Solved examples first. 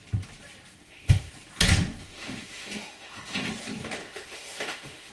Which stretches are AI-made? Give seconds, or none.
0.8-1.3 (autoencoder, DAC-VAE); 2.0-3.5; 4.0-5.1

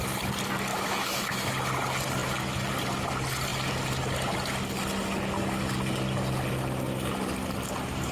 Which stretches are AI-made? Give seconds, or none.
0.7-1.5 (autoencoder, DAC-VAE)

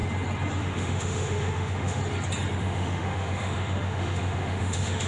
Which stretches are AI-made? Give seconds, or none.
0.6-2.0 (autoencoder, DAC-VAE); 2.6-5.1